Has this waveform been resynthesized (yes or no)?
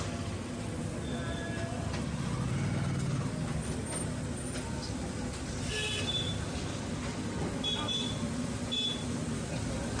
no